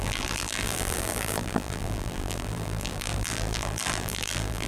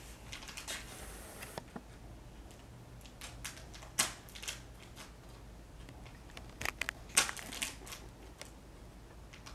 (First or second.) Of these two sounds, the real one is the second